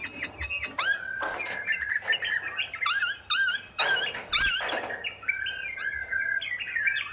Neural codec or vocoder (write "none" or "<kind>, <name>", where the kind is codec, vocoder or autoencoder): none